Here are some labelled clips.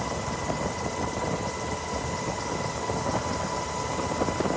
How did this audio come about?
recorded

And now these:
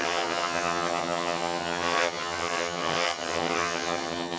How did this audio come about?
remade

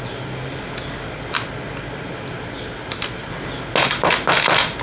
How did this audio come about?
recorded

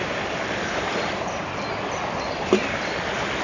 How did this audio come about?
recorded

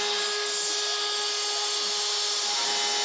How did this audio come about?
recorded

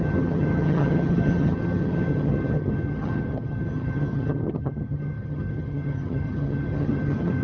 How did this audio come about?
remade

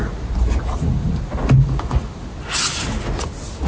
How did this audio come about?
recorded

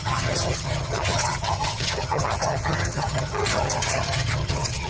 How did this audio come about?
remade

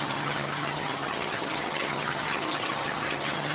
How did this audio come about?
remade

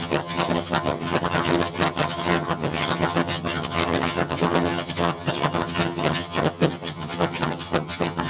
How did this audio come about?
remade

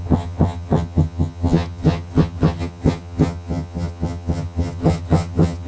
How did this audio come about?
remade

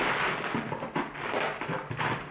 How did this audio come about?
recorded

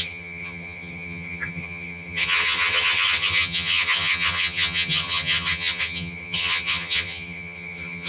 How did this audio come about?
remade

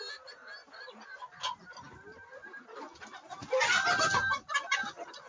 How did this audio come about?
recorded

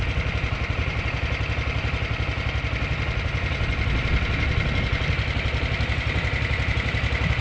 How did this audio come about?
recorded